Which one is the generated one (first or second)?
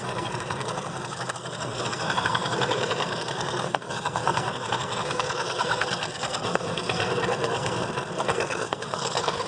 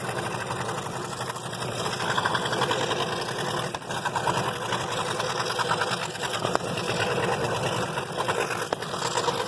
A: first